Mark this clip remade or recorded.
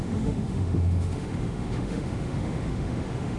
remade